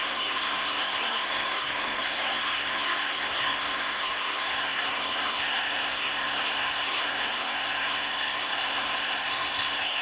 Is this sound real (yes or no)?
no